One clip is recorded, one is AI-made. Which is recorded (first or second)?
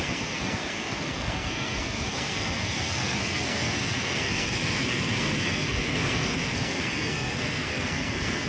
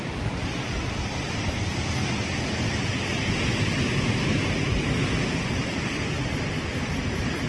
second